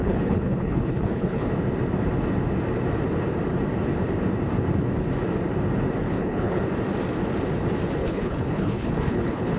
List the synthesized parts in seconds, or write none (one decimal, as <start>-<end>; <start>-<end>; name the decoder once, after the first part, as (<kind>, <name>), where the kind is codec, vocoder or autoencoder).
0.0-1.5 (codec, HILCodec); 6.0-6.6; 8.0-9.6